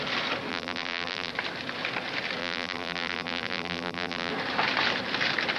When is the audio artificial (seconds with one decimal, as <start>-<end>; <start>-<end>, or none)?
0.5-1.3; 2.4-4.3